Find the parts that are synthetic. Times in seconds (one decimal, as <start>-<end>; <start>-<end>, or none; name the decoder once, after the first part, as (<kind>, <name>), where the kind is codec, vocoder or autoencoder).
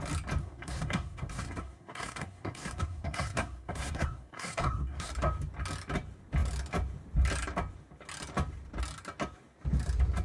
0.4-5.1 (codec, SNAC)